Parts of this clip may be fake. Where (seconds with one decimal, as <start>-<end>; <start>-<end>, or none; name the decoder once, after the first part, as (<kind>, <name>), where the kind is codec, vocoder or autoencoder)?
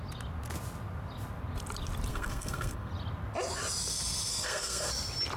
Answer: 2.1-2.9 (codec, SNAC); 4.3-4.9